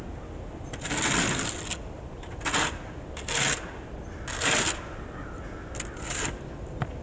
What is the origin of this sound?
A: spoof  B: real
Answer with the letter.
B